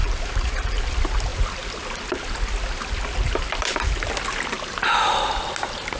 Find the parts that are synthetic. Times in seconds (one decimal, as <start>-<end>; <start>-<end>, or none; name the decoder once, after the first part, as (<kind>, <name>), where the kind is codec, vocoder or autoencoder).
0.0-0.9 (vocoder, BigVGAN v2)

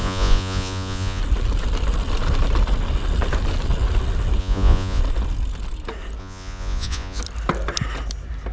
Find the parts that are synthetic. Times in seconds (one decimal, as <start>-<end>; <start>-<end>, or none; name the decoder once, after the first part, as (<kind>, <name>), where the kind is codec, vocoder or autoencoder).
0.0-1.2 (vocoder, Vocos); 4.4-5.0; 6.2-7.2

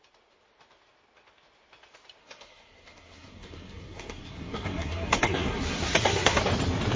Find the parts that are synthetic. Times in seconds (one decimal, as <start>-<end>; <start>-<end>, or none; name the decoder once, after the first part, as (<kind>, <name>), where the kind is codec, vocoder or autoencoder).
2.2-6.4 (codec, SNAC)

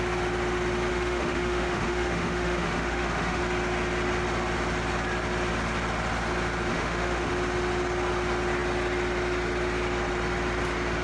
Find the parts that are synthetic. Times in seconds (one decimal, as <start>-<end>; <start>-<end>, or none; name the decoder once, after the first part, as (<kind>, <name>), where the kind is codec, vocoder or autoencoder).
0.9-3.4 (autoencoder, DAC-VAE); 6.7-7.3